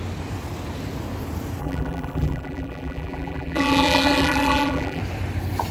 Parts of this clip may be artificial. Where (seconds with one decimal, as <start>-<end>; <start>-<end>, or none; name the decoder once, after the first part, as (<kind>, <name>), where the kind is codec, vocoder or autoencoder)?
1.6-5.0 (vocoder, BigVGAN v2)